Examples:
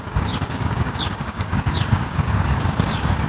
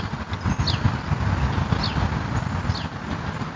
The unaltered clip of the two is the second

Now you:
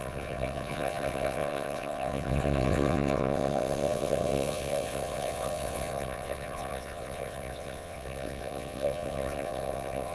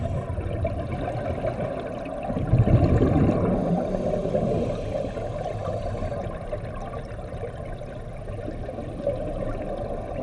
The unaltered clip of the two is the second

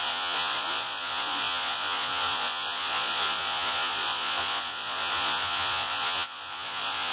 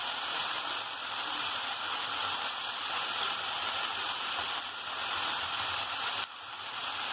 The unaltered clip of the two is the second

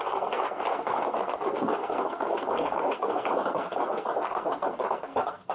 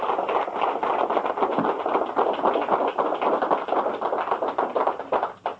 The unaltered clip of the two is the second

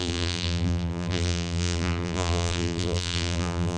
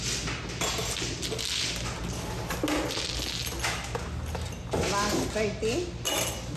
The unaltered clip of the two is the second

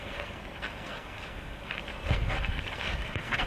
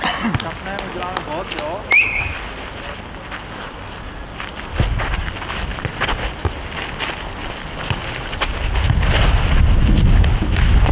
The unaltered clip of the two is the second